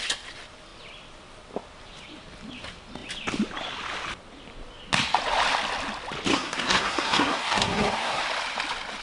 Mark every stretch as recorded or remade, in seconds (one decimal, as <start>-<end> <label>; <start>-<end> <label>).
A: 0.0-6.3 recorded; 6.3-8.2 remade; 8.2-9.0 recorded